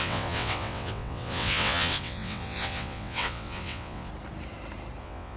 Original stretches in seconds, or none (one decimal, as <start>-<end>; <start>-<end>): 4.1-5.0